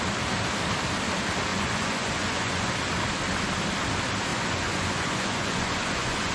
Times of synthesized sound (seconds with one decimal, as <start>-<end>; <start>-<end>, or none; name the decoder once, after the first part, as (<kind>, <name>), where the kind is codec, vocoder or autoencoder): 1.5-2.7 (vocoder, Vocos); 4.3-6.3